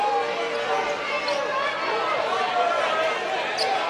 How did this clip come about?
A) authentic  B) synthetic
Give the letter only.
A